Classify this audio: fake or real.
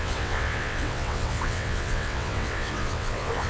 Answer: fake